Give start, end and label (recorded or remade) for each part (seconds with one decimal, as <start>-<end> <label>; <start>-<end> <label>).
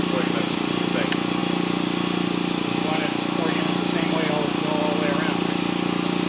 0.0-6.3 recorded